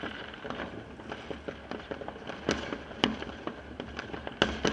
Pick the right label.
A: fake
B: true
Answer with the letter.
B